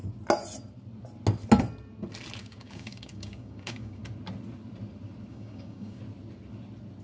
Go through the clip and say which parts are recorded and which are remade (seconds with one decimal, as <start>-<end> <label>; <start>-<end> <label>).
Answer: 0.0-2.4 recorded; 2.4-4.0 remade; 4.0-5.3 recorded; 5.3-6.0 remade; 6.0-7.0 recorded